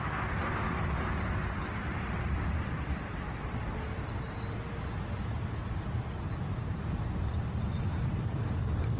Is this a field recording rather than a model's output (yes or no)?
yes